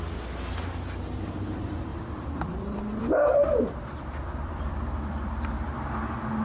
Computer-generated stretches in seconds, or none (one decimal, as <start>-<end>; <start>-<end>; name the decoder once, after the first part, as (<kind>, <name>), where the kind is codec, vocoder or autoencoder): 1.9-5.7 (vocoder, BigVGAN v2)